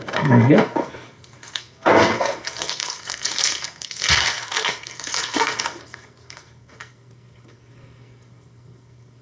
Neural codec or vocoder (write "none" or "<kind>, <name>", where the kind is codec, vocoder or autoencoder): codec, SNAC